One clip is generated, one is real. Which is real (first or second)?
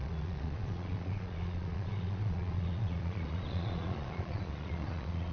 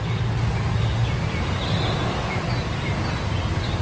second